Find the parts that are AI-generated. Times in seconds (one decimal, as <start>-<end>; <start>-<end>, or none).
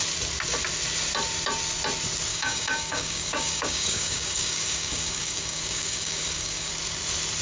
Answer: 2.3-6.7